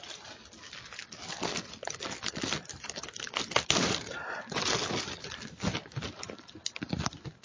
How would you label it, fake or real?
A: fake